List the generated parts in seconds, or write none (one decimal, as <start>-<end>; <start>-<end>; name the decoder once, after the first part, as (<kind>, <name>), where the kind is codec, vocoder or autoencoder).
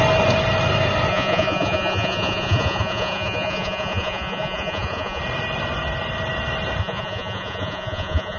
1.1-5.2 (vocoder, Vocos); 6.8-8.4